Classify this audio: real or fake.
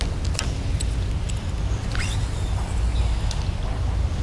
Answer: real